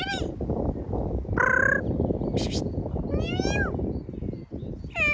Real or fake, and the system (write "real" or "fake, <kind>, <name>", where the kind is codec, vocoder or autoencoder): real